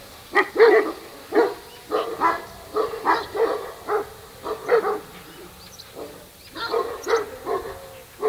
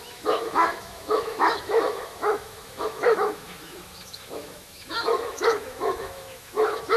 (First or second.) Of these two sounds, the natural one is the first